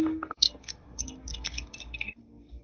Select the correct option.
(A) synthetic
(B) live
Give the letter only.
A